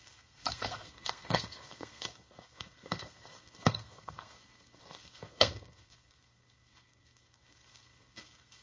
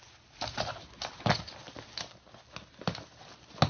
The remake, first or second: first